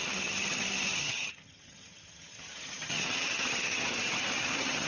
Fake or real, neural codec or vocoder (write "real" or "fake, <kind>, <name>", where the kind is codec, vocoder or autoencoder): fake, vocoder, HiFi-GAN